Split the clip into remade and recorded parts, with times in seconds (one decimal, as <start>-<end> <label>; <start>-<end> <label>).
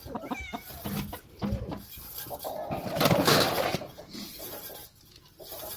0.0-5.8 recorded